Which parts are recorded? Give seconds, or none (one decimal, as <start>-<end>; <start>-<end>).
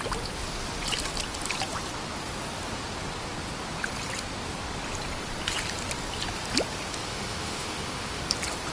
0.0-6.9; 8.2-8.7